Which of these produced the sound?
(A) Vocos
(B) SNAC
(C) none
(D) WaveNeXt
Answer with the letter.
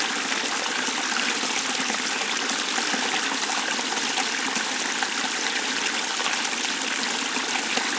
C